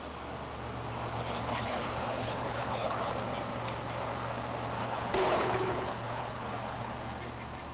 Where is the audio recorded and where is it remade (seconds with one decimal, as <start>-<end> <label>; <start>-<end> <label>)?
0.0-1.5 recorded; 1.5-3.1 remade; 3.1-4.8 recorded; 4.8-6.9 remade; 6.9-7.7 recorded

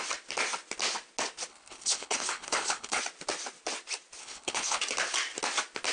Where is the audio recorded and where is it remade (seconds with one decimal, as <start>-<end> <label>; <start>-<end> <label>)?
0.0-1.5 recorded; 1.5-3.0 remade; 3.0-4.2 recorded; 4.2-4.8 remade; 4.8-5.9 recorded

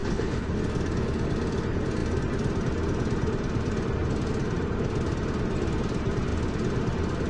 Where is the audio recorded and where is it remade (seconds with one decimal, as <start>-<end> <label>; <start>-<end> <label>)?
0.0-0.6 remade; 0.6-7.3 recorded

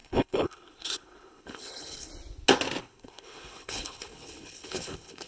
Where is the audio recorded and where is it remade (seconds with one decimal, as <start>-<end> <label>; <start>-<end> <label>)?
0.0-2.1 remade; 2.1-2.8 recorded; 2.8-5.3 remade

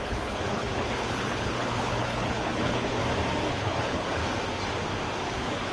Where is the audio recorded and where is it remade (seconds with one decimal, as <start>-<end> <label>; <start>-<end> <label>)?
0.0-3.0 remade; 3.0-3.5 recorded; 3.5-4.2 remade; 4.2-5.2 recorded; 5.2-5.7 remade

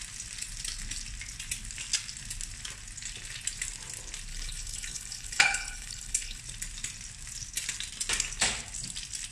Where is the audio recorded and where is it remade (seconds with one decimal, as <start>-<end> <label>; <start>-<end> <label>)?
0.0-4.3 recorded; 4.3-6.4 remade; 6.4-9.3 recorded

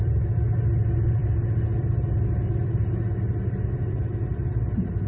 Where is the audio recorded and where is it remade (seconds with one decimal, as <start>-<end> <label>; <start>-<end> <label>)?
0.0-5.1 recorded

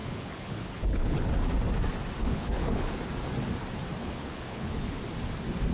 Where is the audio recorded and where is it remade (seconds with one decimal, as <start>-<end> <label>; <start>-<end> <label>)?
0.0-1.3 remade; 1.3-2.2 recorded; 2.2-2.9 remade; 2.9-4.0 recorded; 4.0-5.0 remade; 5.0-5.7 recorded